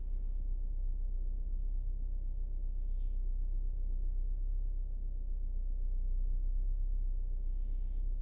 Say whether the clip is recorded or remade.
recorded